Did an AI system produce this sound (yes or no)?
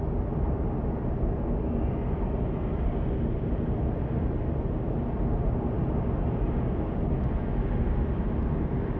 no